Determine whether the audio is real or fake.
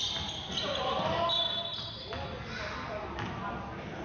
real